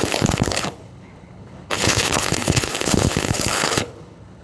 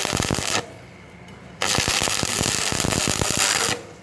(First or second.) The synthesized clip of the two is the first